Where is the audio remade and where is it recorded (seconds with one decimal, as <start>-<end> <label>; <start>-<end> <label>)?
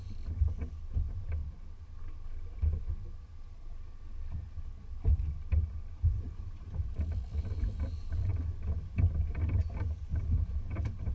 0.0-11.1 recorded